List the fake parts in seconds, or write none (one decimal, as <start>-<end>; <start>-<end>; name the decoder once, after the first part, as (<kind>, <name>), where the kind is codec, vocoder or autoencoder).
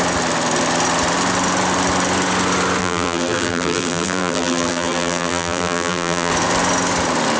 2.8-6.3 (vocoder, BigVGAN v2)